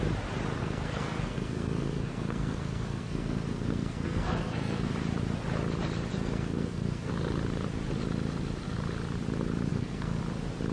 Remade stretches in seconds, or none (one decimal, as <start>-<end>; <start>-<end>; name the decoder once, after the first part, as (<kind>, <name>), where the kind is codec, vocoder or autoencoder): 0.6-4.9 (codec, SNAC); 6.1-7.1; 9.7-10.2